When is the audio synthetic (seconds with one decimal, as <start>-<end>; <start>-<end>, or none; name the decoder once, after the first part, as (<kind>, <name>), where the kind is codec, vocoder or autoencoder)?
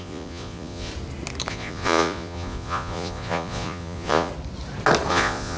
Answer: 0.0-0.9 (vocoder, Vocos); 1.5-4.3; 5.1-5.6